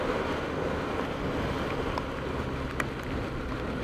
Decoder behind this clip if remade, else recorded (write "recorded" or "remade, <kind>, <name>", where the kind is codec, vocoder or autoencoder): recorded